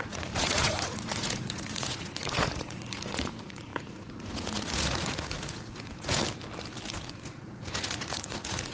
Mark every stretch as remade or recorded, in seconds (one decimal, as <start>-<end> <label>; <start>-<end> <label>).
0.0-6.2 remade; 6.2-6.9 recorded; 6.9-8.7 remade